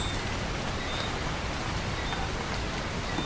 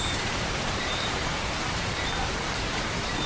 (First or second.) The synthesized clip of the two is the second